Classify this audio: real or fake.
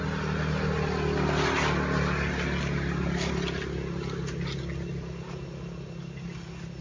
real